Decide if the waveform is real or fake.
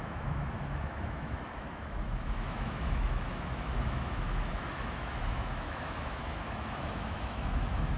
fake